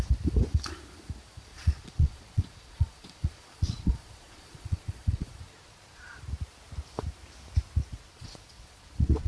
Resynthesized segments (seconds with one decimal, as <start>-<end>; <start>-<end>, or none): 1.5-6.2; 7.9-9.3